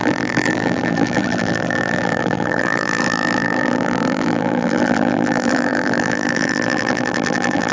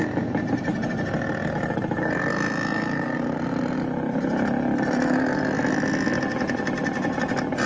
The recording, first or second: second